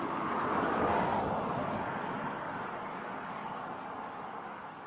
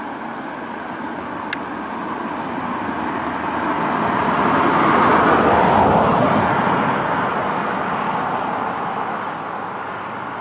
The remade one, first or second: first